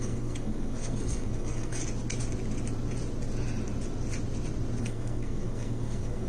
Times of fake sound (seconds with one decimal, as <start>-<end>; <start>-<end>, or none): 0.0-1.8; 4.8-6.3